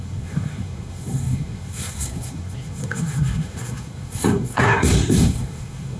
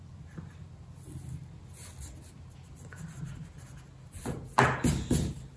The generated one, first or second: first